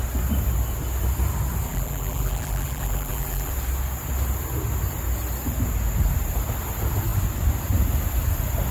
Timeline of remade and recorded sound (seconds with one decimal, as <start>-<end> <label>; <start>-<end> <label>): 0.0-1.7 recorded; 1.7-3.5 remade; 3.5-8.7 recorded